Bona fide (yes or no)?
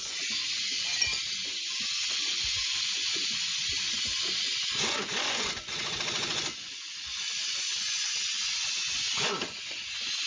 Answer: no